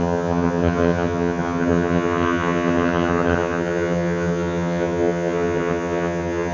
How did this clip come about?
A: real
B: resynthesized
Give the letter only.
B